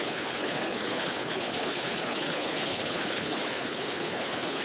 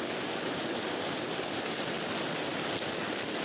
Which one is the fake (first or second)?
first